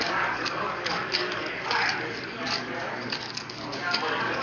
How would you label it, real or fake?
fake